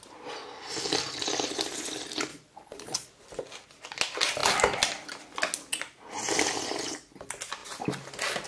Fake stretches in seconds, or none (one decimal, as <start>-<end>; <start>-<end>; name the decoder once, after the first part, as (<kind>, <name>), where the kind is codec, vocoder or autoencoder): 2.3-3.1 (vocoder, Vocos)